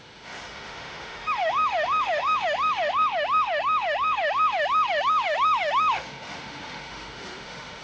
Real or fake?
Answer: fake